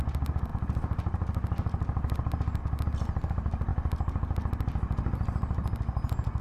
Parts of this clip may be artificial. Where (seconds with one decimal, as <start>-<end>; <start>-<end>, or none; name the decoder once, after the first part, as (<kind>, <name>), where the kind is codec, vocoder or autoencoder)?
none